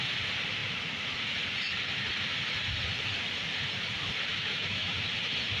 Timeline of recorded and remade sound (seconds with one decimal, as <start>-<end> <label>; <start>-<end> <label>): 0.0-4.3 recorded; 4.3-4.9 remade; 4.9-5.6 recorded